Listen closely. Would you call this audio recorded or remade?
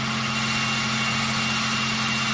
recorded